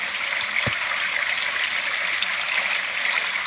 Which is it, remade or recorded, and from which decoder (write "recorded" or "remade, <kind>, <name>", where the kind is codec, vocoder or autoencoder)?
recorded